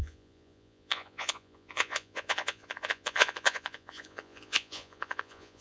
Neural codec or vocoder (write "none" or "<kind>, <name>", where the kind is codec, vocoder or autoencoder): vocoder, Vocos